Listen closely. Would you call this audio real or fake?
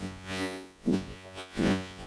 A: fake